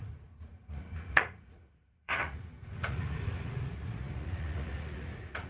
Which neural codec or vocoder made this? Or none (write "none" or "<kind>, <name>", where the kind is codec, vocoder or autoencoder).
vocoder, Vocos